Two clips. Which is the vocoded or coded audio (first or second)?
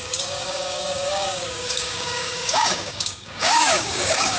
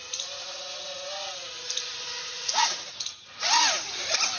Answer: first